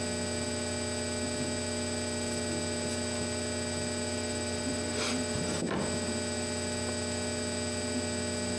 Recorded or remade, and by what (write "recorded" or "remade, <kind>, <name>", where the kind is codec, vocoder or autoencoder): recorded